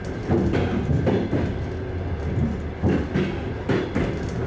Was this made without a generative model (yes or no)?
yes